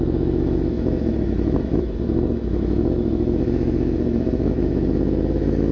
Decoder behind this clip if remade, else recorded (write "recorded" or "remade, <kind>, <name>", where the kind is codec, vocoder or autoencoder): remade, autoencoder, DAC-VAE